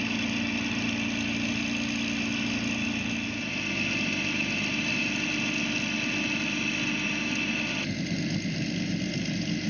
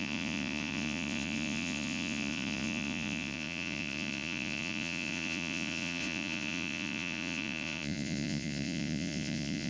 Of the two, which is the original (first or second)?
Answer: first